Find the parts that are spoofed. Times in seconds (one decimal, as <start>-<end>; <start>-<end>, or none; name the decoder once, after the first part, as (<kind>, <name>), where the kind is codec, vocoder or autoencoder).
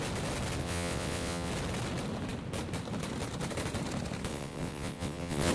0.6-1.5 (vocoder, WaveNeXt); 4.3-5.5